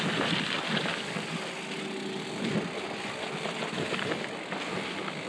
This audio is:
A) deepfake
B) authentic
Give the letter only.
B